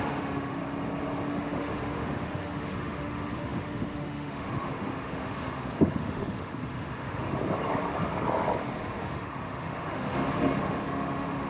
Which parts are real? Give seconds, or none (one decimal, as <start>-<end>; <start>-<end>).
0.6-1.3; 7.3-9.0